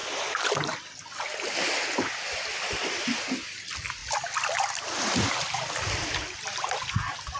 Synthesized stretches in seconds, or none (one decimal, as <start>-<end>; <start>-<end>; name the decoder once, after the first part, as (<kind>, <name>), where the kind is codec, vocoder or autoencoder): 1.6-7.4 (vocoder, BigVGAN v2)